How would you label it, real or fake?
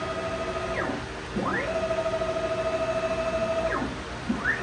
real